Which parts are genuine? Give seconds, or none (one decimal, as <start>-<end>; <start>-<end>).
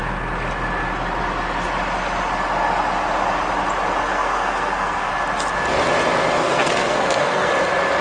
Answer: 0.0-4.1; 5.1-6.4; 7.5-8.0